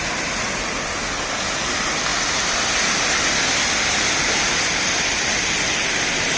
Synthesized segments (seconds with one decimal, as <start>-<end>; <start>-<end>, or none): 2.1-5.9